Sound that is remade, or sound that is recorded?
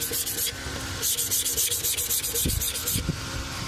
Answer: remade